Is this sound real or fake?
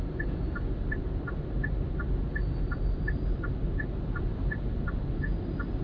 real